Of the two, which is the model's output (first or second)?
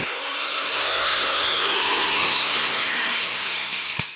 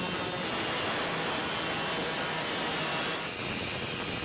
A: first